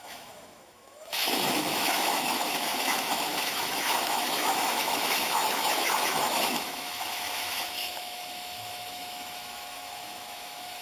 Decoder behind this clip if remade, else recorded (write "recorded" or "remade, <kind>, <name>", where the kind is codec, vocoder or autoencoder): remade, autoencoder, DAC-VAE